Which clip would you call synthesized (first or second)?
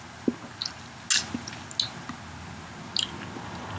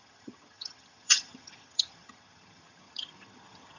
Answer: second